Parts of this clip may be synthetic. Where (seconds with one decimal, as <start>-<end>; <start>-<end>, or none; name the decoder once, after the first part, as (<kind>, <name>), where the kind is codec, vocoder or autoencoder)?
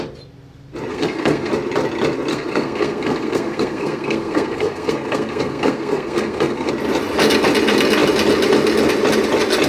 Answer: 0.9-1.5 (codec, SNAC); 2.3-6.7